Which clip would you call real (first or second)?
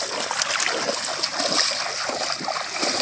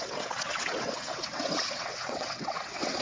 first